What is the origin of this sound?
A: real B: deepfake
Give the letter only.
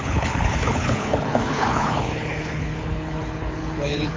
B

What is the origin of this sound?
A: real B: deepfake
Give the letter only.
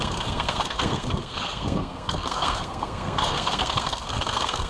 B